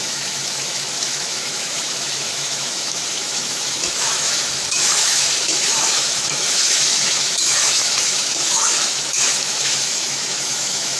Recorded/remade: remade